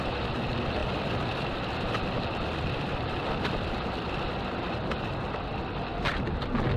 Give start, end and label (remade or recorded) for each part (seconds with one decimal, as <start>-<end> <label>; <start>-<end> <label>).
0.0-5.9 remade; 5.9-6.8 recorded